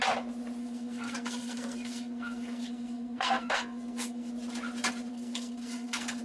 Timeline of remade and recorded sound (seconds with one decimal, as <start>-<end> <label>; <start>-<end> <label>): 0.0-0.6 recorded; 0.6-4.3 remade; 4.3-5.1 recorded; 5.1-6.2 remade